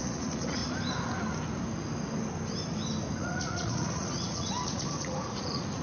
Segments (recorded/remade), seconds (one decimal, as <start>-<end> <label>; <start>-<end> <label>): 0.0-0.6 remade; 0.6-3.2 recorded; 3.2-5.8 remade